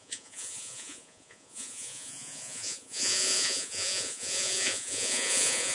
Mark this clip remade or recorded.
remade